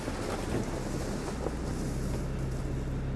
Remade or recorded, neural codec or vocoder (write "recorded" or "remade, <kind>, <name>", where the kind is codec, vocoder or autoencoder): recorded